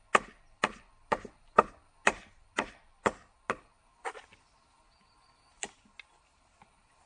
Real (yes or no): yes